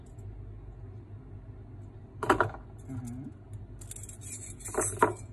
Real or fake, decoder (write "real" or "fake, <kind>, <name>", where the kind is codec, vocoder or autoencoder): real